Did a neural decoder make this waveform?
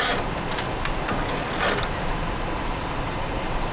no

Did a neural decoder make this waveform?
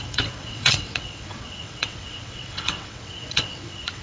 yes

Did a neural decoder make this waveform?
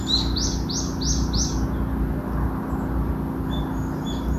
no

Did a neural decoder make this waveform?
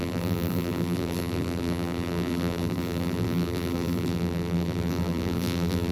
yes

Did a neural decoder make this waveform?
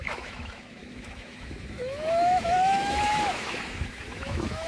yes